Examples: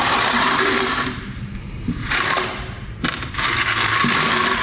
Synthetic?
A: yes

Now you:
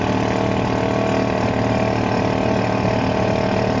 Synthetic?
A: no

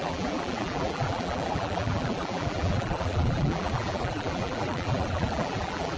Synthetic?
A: yes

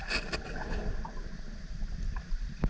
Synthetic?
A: no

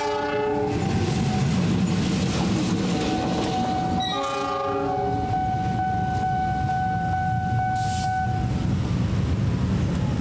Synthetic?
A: no